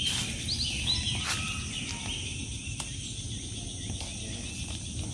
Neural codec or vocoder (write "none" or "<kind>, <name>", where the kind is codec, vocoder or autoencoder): none